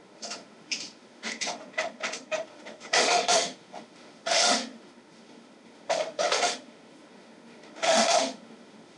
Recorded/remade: remade